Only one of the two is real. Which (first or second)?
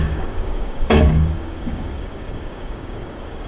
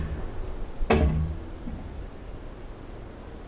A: second